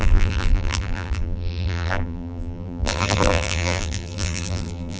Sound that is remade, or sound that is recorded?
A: remade